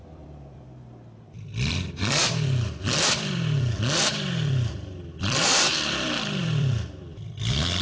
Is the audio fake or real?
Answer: fake